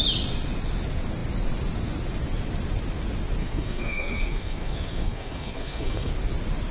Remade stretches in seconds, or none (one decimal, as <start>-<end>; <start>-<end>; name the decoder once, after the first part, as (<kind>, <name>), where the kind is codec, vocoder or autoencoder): 3.4-6.1 (codec, SNAC)